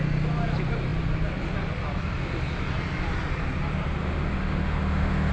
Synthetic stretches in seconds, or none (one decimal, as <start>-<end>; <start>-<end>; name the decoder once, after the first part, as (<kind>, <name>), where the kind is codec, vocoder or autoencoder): 4.0-5.3 (autoencoder, DAC-VAE)